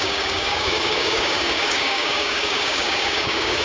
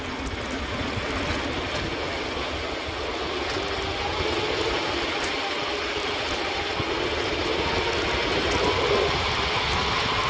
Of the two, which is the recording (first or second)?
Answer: second